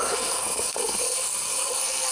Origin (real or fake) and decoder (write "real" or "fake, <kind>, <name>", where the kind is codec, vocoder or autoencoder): fake, codec, SNAC